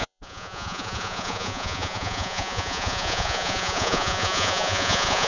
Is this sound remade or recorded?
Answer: remade